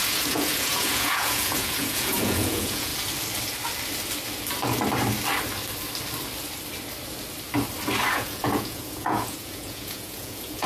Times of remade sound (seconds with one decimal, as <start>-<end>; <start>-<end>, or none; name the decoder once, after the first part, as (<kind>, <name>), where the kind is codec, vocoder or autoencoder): 0.0-2.9 (vocoder, Vocos); 8.1-10.7